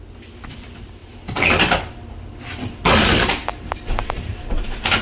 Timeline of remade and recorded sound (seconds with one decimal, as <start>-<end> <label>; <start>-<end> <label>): 0.0-3.5 recorded; 3.5-4.6 remade; 4.6-5.0 recorded